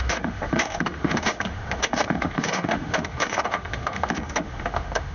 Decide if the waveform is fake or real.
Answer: fake